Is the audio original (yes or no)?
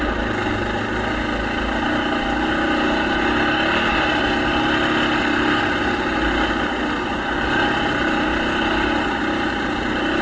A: yes